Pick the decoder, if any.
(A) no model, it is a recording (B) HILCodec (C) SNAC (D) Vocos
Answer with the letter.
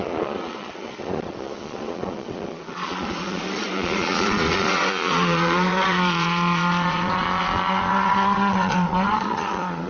D